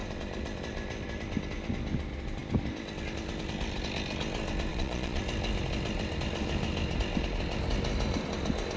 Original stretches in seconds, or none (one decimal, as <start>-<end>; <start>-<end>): 0.0-4.7; 5.2-8.8